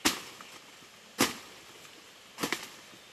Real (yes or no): yes